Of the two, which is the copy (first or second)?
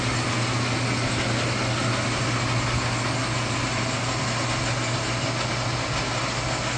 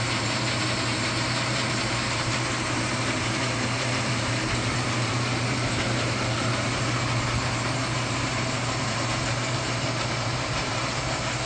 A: second